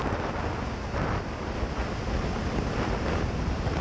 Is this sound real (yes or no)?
yes